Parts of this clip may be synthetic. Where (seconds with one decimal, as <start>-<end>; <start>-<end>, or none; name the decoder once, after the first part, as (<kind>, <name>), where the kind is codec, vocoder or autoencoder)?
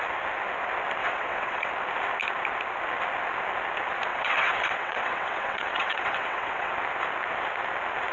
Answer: 1.0-1.7 (vocoder, WaveNeXt); 4.1-6.7